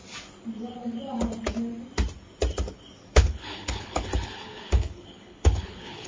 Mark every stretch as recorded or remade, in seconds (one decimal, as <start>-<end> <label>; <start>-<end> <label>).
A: 0.0-3.1 recorded; 3.1-6.1 remade